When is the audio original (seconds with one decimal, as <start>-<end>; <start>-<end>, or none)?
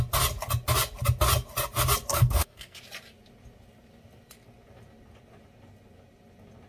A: 0.0-2.1; 2.8-6.7